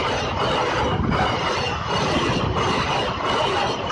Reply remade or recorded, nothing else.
recorded